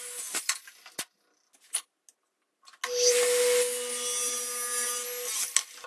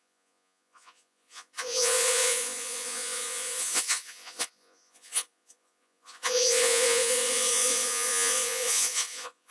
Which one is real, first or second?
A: first